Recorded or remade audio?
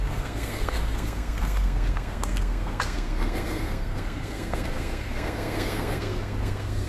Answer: remade